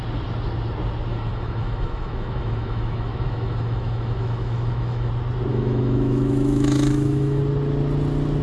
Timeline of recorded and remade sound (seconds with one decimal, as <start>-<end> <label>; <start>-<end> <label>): 0.0-1.1 recorded; 1.1-5.1 remade; 5.1-5.5 recorded; 5.5-7.4 remade; 7.4-8.4 recorded

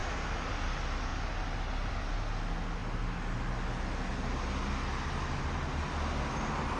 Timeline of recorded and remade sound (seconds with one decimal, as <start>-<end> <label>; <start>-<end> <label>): 0.0-6.8 recorded

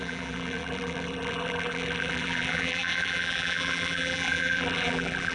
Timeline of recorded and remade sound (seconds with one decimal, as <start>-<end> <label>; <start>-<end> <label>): 0.0-5.3 remade